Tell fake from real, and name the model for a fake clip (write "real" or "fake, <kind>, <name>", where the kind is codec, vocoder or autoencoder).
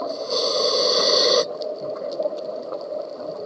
real